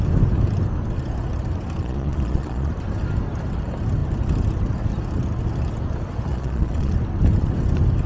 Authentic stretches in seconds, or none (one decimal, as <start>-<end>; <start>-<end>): 0.0-1.8; 2.7-6.3; 6.9-8.1